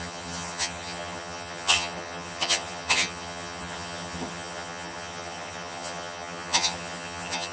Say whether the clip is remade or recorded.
remade